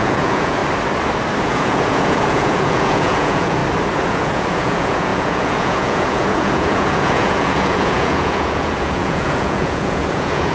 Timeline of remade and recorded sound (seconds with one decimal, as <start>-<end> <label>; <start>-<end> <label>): 0.0-0.6 remade; 0.6-1.4 recorded; 1.4-3.6 remade; 3.6-4.1 recorded; 4.1-10.5 remade